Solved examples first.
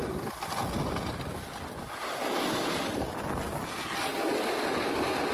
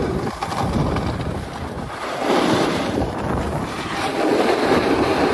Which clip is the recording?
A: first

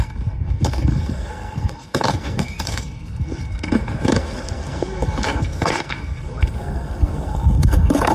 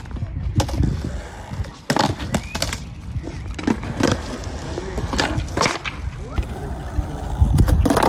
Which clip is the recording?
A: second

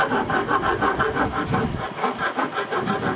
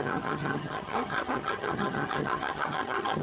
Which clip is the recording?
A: first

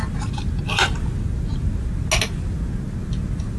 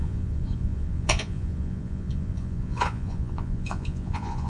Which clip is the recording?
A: first